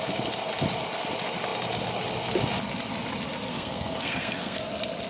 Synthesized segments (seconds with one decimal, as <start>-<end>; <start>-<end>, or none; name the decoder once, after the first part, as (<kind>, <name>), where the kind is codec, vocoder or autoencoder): 3.5-4.6 (codec, SNAC)

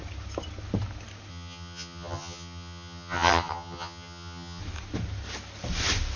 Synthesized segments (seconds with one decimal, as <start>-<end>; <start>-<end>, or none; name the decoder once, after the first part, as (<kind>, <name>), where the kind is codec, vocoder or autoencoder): 1.3-4.6 (vocoder, HiFi-GAN)